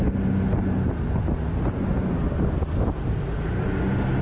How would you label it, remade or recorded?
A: recorded